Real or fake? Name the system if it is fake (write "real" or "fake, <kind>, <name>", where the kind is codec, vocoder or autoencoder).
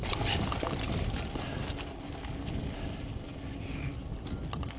real